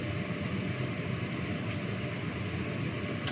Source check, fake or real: real